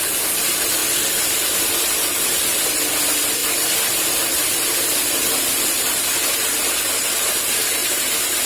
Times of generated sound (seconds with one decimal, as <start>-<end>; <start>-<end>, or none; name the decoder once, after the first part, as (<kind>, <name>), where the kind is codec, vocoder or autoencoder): none